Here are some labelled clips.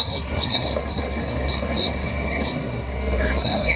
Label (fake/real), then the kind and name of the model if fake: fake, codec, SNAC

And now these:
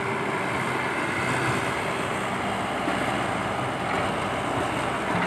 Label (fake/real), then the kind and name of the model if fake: real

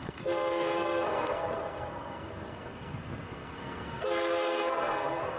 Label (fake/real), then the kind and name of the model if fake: fake, codec, SNAC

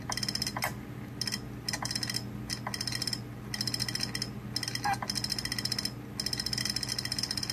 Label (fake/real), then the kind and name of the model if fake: real